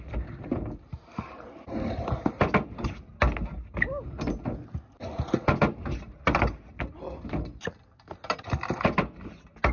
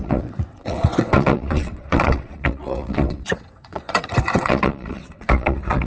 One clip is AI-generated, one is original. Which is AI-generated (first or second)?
second